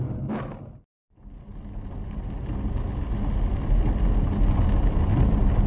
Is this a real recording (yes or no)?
yes